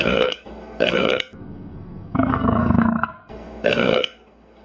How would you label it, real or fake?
fake